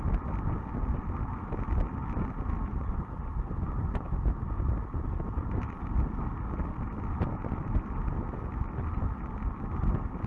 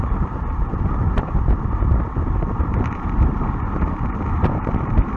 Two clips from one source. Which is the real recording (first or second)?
first